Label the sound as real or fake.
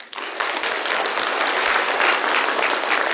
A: real